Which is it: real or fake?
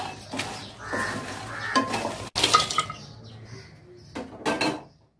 real